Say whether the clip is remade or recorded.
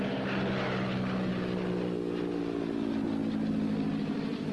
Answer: recorded